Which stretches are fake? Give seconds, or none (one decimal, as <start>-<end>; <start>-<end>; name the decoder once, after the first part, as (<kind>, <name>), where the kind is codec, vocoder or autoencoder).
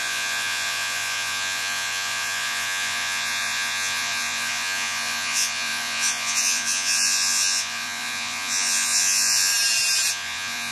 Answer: 0.0-9.5 (vocoder, Vocos); 10.1-10.7